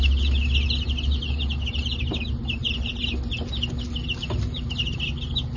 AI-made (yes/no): no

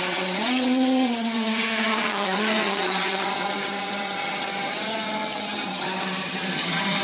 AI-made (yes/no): yes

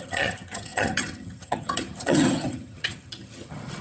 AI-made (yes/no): yes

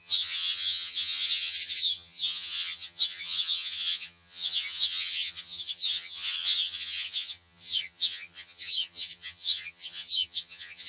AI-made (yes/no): yes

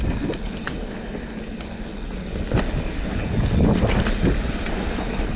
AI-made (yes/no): no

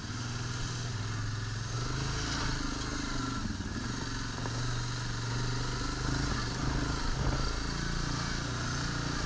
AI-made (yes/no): no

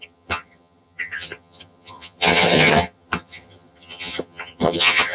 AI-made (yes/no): yes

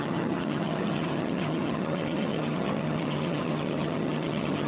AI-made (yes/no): yes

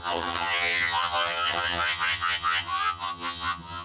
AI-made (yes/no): yes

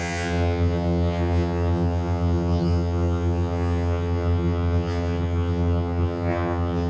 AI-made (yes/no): yes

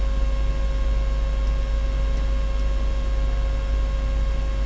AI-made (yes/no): no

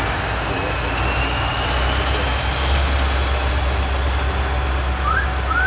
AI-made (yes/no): no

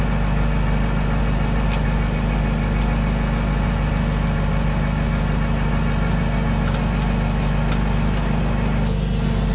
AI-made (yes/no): no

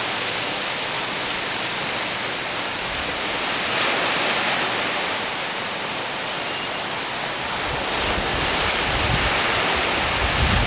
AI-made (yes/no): no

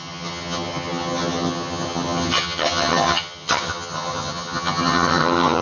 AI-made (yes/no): yes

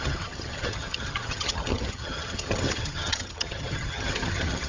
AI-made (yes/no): yes